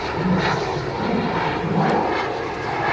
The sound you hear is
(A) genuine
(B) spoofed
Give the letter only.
A